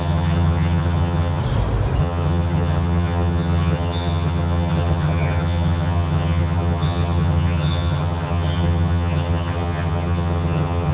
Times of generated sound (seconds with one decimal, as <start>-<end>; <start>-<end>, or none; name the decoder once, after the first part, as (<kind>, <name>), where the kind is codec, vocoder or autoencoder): 0.0-1.4 (vocoder, HiFi-GAN); 2.0-10.9